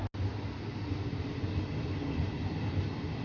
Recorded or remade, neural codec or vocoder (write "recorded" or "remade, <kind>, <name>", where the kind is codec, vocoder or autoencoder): recorded